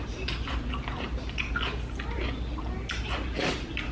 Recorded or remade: recorded